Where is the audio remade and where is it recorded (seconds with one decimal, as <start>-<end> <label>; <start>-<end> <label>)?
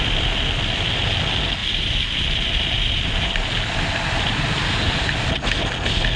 0.0-1.6 recorded; 1.6-5.3 remade; 5.3-6.2 recorded